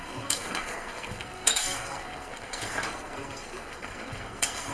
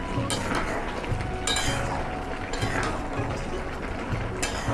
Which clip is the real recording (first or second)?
second